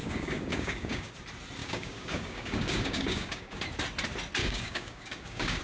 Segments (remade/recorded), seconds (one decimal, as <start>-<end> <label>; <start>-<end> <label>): 0.0-1.1 remade; 1.1-1.6 recorded; 1.6-3.6 remade; 3.6-4.4 recorded; 4.4-5.6 remade